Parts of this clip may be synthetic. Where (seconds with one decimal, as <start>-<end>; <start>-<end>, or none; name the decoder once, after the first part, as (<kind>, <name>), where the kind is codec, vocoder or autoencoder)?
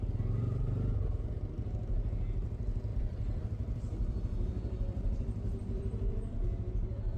2.9-6.4 (vocoder, BigVGAN v2)